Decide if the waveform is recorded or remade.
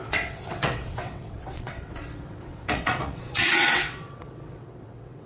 remade